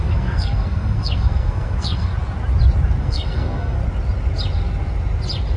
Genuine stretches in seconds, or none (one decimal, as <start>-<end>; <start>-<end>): 2.1-3.0; 3.8-5.6